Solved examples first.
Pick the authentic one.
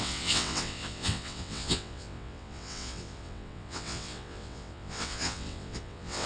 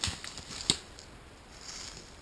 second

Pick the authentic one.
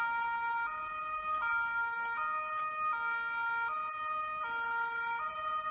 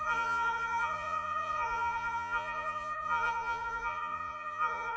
first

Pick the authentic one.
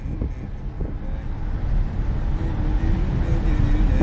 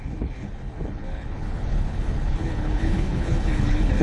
first